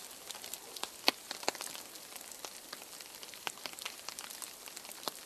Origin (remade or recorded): remade